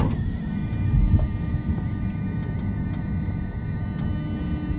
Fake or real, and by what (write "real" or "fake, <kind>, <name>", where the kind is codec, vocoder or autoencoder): real